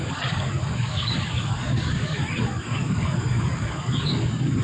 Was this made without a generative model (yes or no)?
no